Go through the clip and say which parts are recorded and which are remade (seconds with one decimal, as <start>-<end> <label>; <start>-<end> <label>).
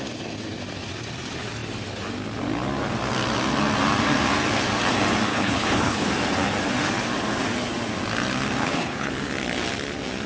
0.0-5.3 recorded; 5.3-6.1 remade; 6.1-8.6 recorded; 8.6-9.1 remade; 9.1-10.3 recorded